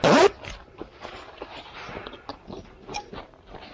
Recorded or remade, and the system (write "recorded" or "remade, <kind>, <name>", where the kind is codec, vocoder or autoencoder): recorded